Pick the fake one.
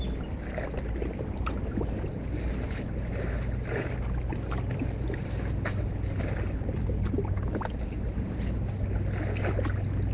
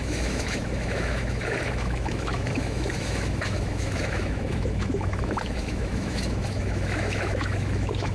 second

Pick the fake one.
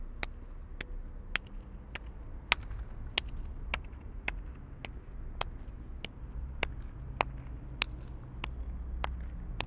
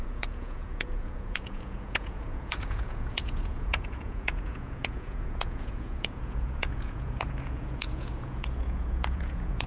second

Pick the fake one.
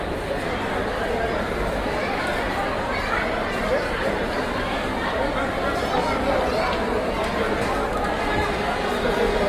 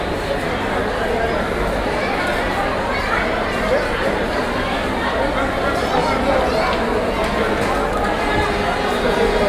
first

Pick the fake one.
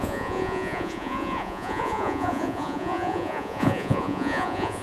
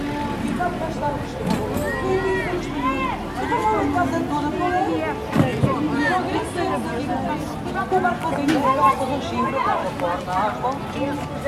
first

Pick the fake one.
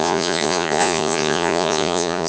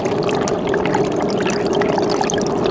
first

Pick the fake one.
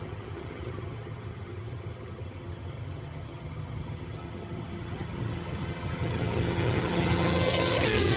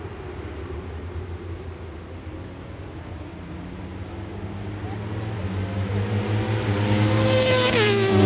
first